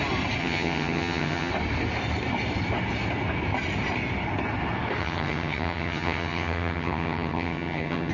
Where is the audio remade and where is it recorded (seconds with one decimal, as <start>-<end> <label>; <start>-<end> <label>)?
0.0-0.4 recorded; 0.4-1.5 remade; 1.5-5.0 recorded; 5.0-8.1 remade